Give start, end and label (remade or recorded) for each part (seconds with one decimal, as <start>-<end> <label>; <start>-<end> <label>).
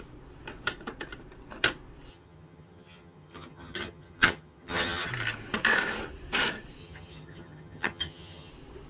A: 0.0-2.1 recorded; 2.1-5.1 remade; 5.1-6.8 recorded; 6.8-8.5 remade; 8.5-8.9 recorded